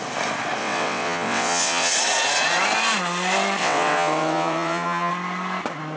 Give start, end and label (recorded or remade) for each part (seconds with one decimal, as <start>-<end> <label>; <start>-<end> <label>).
0.0-0.6 recorded; 0.6-1.9 remade; 1.9-3.6 recorded; 3.6-5.1 remade; 5.1-6.0 recorded